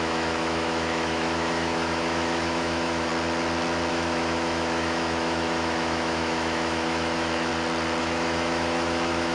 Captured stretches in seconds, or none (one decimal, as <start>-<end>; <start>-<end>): 3.1-3.9; 7.5-8.0